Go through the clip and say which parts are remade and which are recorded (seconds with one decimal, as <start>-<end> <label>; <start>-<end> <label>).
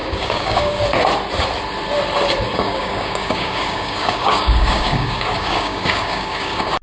0.0-0.8 remade; 0.8-2.5 recorded; 2.5-6.8 remade